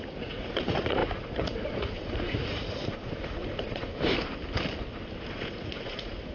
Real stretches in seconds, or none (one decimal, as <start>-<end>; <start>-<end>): 3.9-5.2